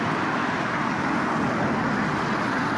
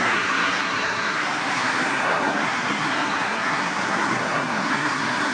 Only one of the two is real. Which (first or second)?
first